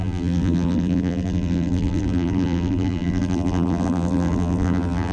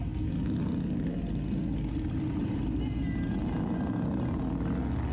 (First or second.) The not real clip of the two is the first